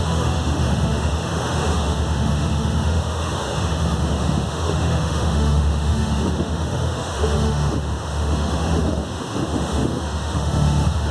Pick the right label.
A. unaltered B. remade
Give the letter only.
B